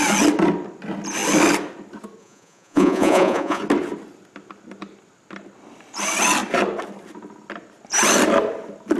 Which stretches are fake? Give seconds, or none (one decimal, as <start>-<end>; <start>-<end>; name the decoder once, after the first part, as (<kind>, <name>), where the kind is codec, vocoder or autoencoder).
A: 2.2-3.6 (vocoder, Vocos)